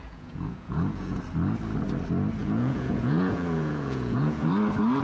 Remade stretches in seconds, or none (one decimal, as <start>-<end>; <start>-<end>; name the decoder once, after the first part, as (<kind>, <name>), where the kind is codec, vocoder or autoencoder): 0.0-1.2 (vocoder, Vocos); 2.4-4.5